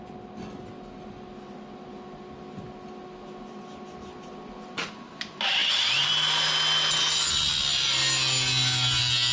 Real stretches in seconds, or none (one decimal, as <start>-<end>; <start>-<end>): 0.0-9.3